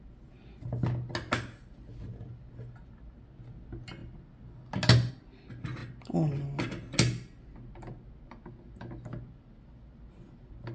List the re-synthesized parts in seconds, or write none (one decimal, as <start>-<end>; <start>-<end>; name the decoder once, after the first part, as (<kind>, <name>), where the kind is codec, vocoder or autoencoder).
none